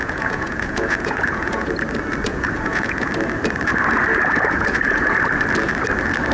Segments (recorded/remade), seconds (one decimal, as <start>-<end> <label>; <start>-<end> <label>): 0.0-1.7 remade; 1.7-2.3 recorded; 2.3-3.1 remade; 3.1-4.1 recorded; 4.1-5.2 remade; 5.2-6.3 recorded